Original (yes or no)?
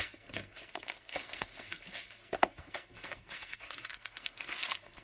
no